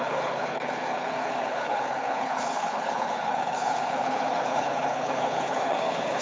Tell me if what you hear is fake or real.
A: fake